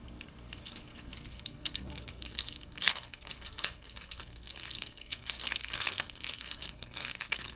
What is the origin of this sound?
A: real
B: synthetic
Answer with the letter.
B